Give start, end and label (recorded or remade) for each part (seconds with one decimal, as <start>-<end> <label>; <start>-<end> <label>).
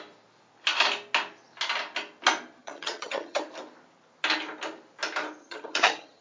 0.0-2.6 recorded; 2.6-3.4 remade; 3.4-5.4 recorded; 5.4-6.2 remade